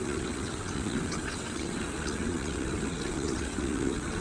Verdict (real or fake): fake